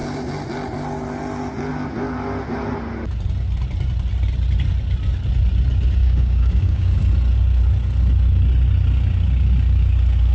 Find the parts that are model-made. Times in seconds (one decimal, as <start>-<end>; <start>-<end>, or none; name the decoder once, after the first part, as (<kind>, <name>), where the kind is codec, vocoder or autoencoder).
6.0-7.0 (codec, DAC)